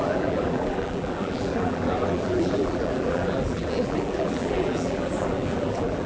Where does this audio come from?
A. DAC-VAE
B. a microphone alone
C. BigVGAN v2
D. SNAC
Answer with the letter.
C